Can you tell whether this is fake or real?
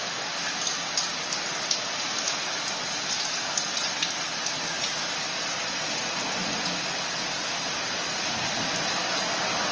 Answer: real